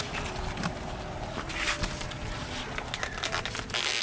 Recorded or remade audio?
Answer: recorded